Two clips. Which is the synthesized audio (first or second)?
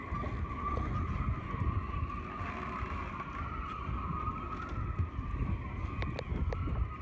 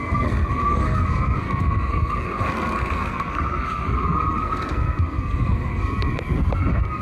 second